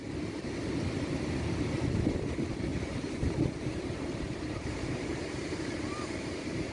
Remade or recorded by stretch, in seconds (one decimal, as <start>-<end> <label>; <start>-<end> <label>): 0.0-2.7 recorded; 2.7-6.7 remade